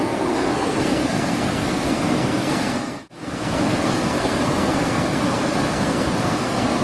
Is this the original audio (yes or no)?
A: no